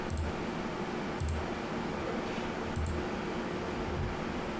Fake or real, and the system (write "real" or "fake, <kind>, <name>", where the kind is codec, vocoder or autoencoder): real